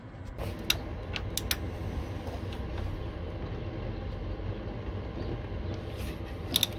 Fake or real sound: real